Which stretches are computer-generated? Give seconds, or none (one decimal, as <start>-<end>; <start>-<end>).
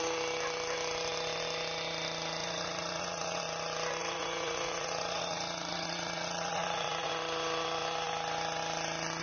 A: 2.4-3.4; 4.0-7.1